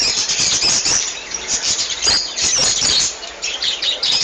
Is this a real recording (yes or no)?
no